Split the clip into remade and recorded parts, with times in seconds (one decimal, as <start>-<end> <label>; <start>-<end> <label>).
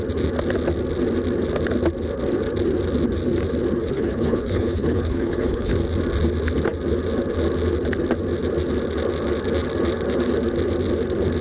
0.0-3.8 recorded; 3.8-5.7 remade; 5.7-11.4 recorded